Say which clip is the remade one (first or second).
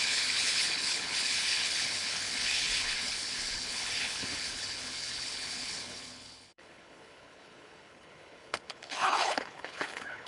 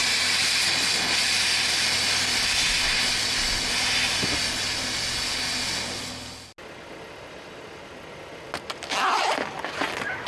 first